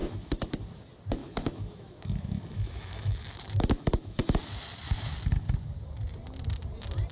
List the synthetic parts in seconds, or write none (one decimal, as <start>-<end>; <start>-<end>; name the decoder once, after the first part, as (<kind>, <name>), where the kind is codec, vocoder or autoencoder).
0.0-0.6 (autoencoder, DAC-VAE); 1.2-4.4